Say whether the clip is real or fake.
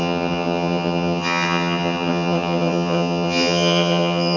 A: fake